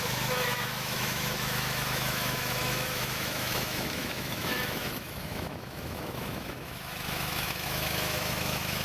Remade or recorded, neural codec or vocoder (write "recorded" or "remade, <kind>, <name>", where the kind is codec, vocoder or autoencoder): remade, autoencoder, DAC-VAE